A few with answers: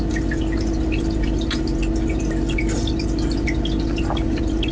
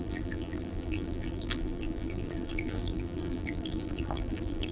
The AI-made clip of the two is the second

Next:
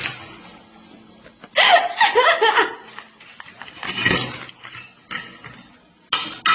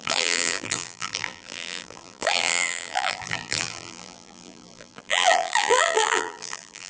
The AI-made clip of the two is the second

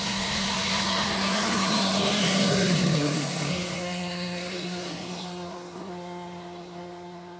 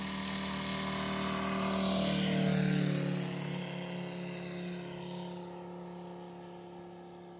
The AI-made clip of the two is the first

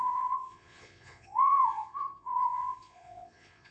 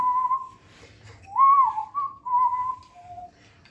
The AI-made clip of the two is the first